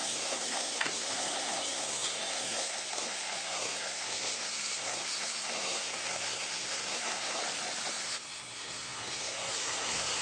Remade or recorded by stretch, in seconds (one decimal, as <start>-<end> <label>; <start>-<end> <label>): 0.0-7.4 remade; 7.4-7.9 recorded; 7.9-10.2 remade